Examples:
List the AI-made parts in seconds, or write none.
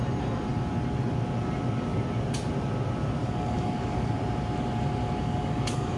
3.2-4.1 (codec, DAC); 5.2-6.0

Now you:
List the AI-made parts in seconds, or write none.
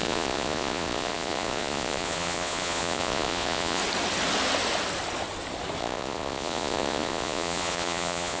0.0-3.8 (vocoder, Vocos); 5.8-8.4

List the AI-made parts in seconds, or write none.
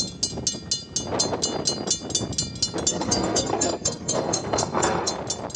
2.9-5.1 (codec, SNAC)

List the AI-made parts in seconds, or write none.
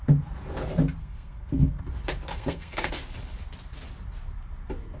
1.0-1.8 (codec, SNAC); 2.3-2.9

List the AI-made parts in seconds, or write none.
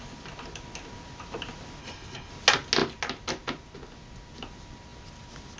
1.8-2.3 (codec, HILCodec)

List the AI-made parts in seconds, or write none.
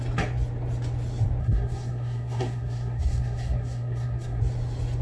1.4-4.4 (codec, SNAC)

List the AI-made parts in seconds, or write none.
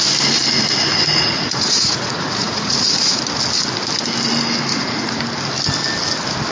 0.9-3.2 (vocoder, Vocos); 4.7-5.2